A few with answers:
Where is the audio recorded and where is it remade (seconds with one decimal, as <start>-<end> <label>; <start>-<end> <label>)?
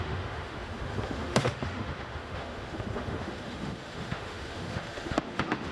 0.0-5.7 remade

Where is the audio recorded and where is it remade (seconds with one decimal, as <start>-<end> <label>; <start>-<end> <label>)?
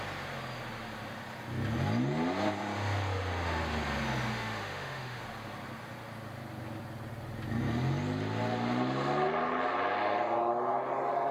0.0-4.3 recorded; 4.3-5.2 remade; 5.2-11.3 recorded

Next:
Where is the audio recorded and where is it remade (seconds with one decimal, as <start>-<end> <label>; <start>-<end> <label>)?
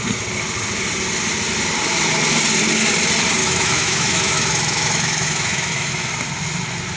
0.0-3.4 recorded; 3.4-6.1 remade; 6.1-7.0 recorded